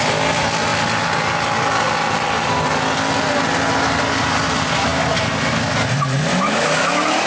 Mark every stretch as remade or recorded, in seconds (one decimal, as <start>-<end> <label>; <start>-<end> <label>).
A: 0.0-7.3 recorded